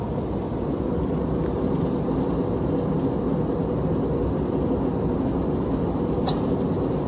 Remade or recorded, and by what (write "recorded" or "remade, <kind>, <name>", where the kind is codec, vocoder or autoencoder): recorded